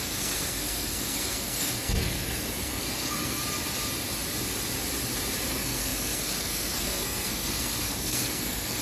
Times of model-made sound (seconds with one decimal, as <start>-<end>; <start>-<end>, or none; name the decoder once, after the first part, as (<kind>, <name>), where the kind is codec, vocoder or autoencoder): 0.0-3.4 (codec, SNAC); 5.5-8.8